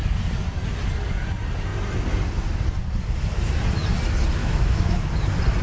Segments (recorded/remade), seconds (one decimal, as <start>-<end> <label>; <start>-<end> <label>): 0.0-4.4 recorded; 4.4-5.1 remade; 5.1-5.6 recorded